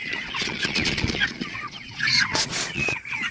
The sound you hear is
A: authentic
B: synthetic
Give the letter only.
B